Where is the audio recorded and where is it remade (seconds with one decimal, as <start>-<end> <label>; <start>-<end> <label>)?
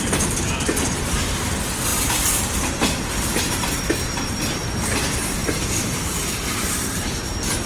0.0-5.4 recorded; 5.4-7.2 remade; 7.2-7.7 recorded